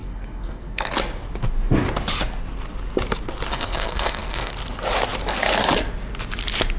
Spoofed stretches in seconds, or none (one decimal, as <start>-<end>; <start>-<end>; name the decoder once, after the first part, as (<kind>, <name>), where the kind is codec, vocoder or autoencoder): 0.0-0.9 (codec, SNAC); 3.5-4.5